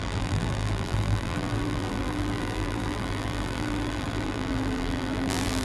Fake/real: fake